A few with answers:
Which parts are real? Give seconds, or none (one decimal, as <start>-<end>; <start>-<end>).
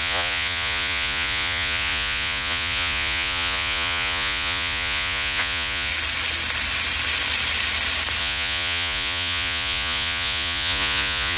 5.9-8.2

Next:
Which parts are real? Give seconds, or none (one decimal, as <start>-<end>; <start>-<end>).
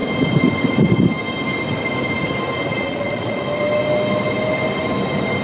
0.0-2.7; 3.4-5.4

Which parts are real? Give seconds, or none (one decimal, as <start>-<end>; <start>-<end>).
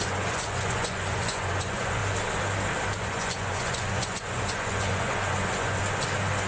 2.0-3.0; 5.8-6.5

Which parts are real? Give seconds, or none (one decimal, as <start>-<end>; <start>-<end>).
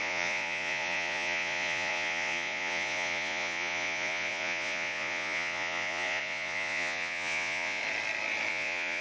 7.8-8.5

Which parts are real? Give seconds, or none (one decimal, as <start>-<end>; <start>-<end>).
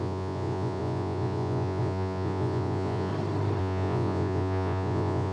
3.1-3.6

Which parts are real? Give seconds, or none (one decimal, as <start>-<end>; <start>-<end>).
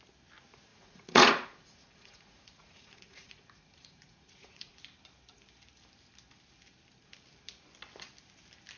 0.0-0.7; 4.8-8.8